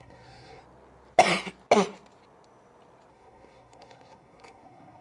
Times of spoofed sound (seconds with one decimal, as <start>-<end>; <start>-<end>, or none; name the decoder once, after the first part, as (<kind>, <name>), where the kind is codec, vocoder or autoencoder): 0.0-0.6 (codec, SNAC); 3.1-5.0